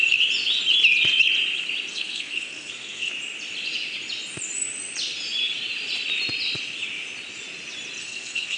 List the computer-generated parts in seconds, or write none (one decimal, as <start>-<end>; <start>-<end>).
1.9-3.1; 8.0-8.6